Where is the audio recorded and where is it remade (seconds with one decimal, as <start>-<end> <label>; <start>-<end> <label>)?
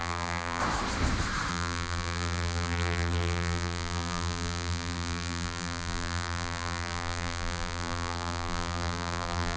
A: 0.0-0.6 remade; 0.6-1.5 recorded; 1.5-9.6 remade